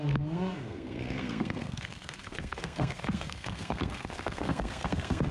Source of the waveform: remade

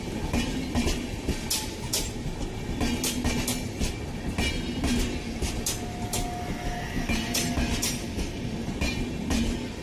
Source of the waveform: recorded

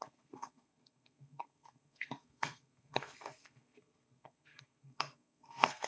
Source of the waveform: remade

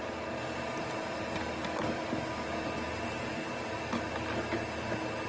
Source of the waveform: recorded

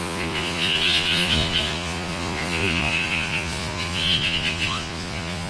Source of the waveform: remade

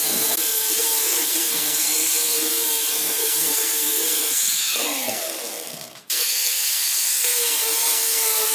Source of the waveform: remade